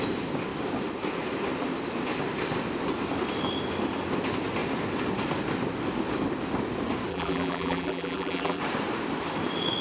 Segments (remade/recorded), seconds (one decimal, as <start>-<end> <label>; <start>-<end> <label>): 0.0-7.1 recorded; 7.1-8.6 remade; 8.6-9.8 recorded